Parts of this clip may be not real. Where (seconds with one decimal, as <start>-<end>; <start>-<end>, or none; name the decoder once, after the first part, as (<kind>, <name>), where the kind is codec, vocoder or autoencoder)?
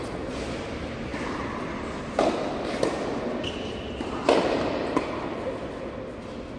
none